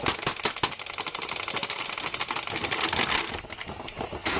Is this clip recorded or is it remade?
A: recorded